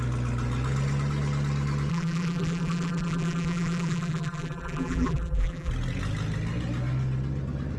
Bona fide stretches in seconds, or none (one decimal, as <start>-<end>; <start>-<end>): 0.0-1.9; 5.7-7.8